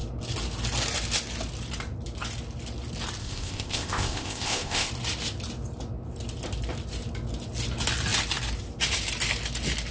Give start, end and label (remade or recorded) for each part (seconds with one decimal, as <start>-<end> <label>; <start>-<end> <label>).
0.0-3.2 recorded; 3.2-4.9 remade; 4.9-9.9 recorded